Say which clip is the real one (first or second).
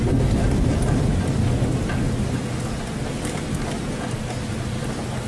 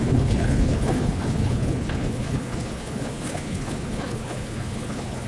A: first